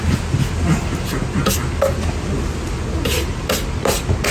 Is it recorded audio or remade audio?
recorded